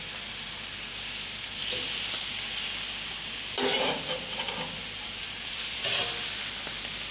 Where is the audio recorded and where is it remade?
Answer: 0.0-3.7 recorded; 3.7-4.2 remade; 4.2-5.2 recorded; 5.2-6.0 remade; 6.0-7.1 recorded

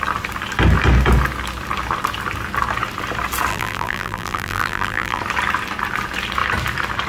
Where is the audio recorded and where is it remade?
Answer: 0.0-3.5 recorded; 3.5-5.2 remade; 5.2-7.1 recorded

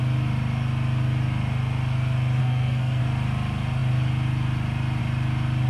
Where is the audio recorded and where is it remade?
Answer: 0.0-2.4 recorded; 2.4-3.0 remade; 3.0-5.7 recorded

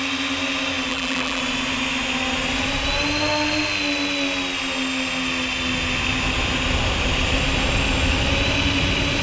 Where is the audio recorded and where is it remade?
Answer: 0.0-0.9 recorded; 0.9-1.4 remade; 1.4-9.2 recorded

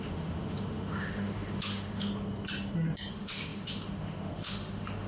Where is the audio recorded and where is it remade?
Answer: 0.0-2.1 remade; 2.1-3.1 recorded; 3.1-5.1 remade

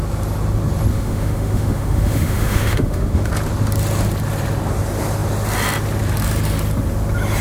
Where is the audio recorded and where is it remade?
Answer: 0.0-0.9 recorded; 0.9-3.3 remade; 3.3-7.4 recorded

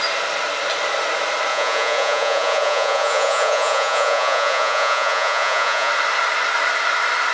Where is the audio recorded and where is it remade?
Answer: 0.0-1.5 recorded; 1.5-5.9 remade; 5.9-7.3 recorded